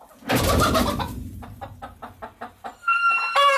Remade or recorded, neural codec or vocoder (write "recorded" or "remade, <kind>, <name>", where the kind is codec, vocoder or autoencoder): recorded